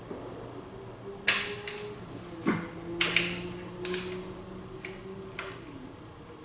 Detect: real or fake real